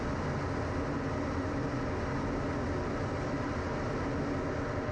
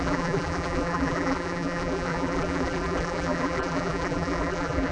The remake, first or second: second